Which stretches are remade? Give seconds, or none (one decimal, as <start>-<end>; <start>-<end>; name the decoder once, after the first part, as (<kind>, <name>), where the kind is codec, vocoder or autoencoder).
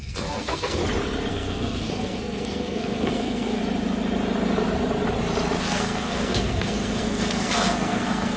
0.0-0.8 (codec, SNAC); 1.3-3.6; 5.6-8.4